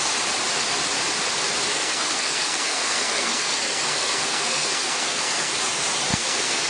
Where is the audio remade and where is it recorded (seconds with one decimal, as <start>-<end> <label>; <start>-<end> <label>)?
0.0-1.7 recorded; 1.7-5.5 remade; 5.5-6.1 recorded; 6.1-6.7 remade